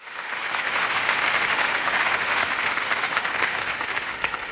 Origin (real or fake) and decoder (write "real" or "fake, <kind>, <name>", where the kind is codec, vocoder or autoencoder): fake, autoencoder, DAC-VAE